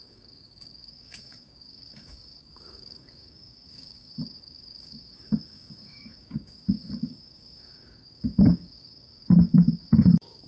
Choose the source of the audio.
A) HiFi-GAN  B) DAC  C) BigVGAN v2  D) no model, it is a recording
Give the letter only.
B